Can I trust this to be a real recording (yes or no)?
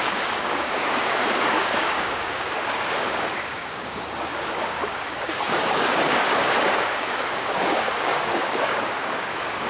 no